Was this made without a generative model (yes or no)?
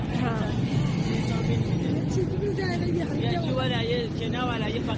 yes